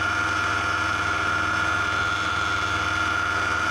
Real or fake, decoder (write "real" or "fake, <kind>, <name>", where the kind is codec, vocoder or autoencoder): real